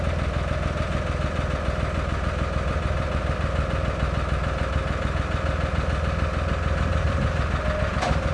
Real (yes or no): yes